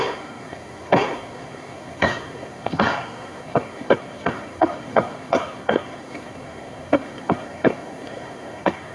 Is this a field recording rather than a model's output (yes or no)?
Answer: no